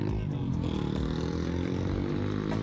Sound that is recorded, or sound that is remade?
recorded